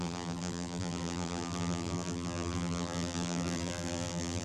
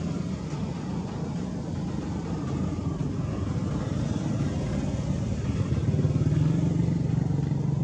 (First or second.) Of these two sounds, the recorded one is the second